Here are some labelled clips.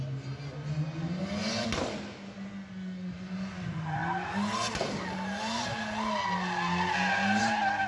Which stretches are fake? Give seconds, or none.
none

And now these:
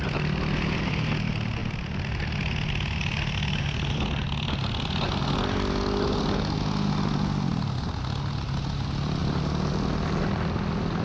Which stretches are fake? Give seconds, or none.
none

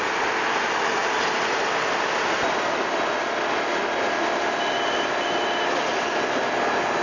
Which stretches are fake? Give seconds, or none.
none

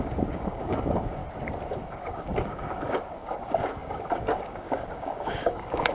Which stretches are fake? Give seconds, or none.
0.0-1.2; 1.9-5.9